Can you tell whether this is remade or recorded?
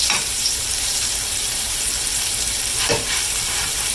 remade